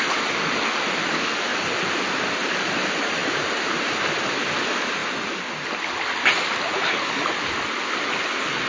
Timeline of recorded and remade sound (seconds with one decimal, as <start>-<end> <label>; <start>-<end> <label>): 0.0-1.5 recorded; 1.5-2.8 remade; 2.8-3.2 recorded; 3.2-4.1 remade; 4.1-8.7 recorded